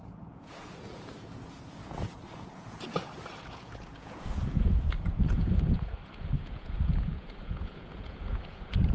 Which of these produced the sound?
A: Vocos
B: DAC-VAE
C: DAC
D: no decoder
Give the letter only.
A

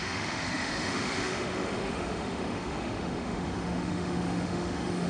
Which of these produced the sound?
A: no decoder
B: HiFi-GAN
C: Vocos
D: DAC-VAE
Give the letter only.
D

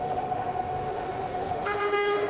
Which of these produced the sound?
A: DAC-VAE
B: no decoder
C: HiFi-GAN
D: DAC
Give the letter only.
A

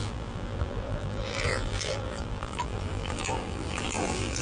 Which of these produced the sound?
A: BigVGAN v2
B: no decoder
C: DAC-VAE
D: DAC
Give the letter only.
A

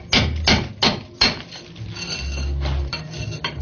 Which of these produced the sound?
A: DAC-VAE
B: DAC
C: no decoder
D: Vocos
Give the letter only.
C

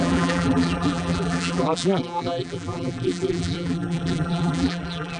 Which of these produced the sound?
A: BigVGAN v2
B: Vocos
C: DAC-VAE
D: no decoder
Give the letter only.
A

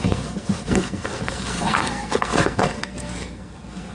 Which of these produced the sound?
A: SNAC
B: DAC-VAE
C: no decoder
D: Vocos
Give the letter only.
A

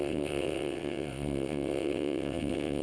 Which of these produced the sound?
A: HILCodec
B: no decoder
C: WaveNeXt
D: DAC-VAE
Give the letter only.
C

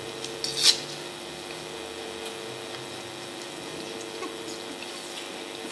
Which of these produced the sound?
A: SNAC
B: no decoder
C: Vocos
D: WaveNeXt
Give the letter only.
B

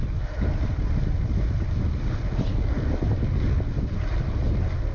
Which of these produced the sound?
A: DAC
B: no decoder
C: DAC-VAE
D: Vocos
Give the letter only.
B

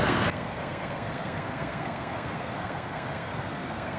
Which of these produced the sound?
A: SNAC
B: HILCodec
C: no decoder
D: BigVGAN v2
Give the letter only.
A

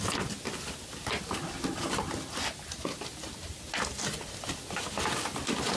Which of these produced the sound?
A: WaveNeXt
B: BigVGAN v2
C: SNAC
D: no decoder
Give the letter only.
D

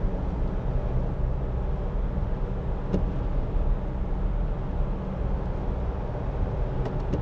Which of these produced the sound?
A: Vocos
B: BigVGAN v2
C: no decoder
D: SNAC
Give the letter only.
C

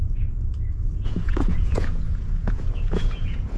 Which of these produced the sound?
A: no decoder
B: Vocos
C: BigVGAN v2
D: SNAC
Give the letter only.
B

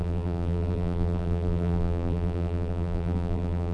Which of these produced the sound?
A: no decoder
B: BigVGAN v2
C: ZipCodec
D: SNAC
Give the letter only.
B